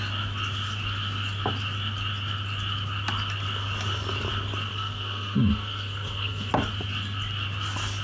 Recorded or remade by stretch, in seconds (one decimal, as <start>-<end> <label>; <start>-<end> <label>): 0.0-4.7 recorded; 4.7-6.5 remade; 6.5-8.0 recorded